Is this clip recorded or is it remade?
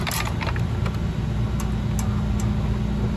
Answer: recorded